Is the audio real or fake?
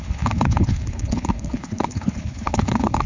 fake